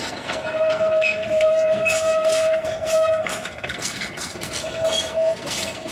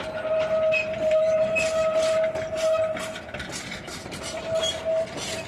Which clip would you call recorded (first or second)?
second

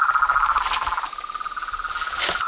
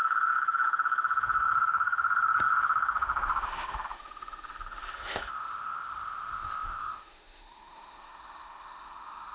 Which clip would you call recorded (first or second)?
first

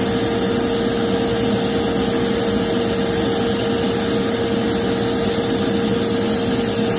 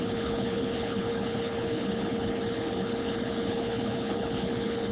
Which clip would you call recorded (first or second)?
first